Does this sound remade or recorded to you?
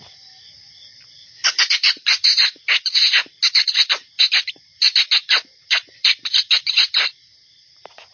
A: recorded